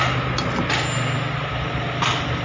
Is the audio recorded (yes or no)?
yes